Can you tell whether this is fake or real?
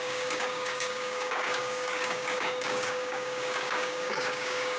fake